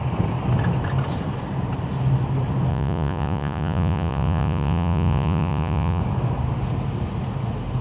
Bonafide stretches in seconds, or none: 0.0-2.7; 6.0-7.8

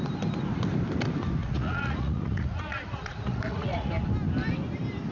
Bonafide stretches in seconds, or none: 0.0-1.4; 3.9-5.1

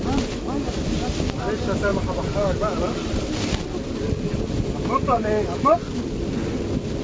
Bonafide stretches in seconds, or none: 0.0-7.0

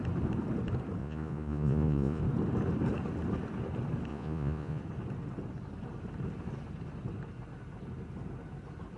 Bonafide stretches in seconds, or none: 0.0-1.0; 2.2-4.1; 4.8-9.0